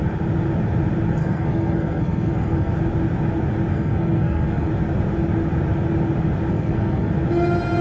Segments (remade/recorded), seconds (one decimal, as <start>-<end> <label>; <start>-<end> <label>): 0.0-1.2 recorded; 1.2-2.7 remade; 2.7-3.7 recorded; 3.7-4.7 remade; 4.7-6.5 recorded; 6.5-7.1 remade; 7.1-7.8 recorded